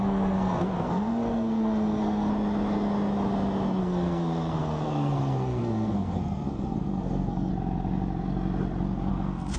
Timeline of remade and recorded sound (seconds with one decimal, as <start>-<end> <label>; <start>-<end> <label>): 0.0-2.3 remade; 2.3-3.8 recorded; 3.8-7.5 remade; 7.5-9.1 recorded; 9.1-9.6 remade